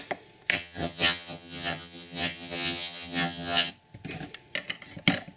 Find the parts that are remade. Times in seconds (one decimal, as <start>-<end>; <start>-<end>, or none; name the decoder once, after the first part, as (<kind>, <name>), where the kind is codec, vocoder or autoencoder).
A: 0.5-3.7 (vocoder, HiFi-GAN)